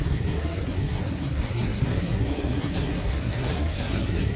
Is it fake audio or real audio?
fake